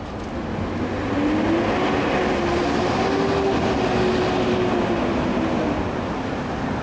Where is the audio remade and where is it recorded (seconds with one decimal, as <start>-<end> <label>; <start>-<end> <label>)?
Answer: 0.0-6.8 recorded